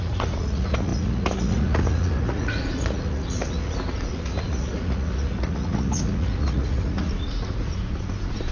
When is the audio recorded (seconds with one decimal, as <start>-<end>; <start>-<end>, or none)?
none